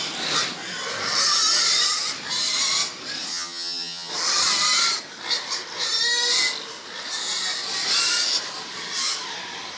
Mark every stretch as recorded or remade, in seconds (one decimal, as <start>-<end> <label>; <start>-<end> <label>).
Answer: 0.0-3.3 recorded; 3.3-4.1 remade; 4.1-9.8 recorded